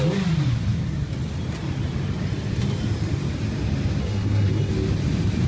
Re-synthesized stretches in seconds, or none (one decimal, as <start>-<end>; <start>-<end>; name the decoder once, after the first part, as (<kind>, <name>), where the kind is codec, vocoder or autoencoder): 4.0-4.7 (codec, SNAC)